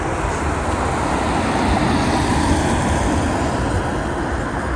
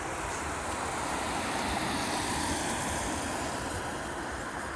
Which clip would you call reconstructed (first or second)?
second